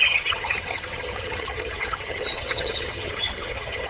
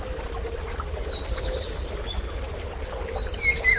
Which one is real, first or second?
second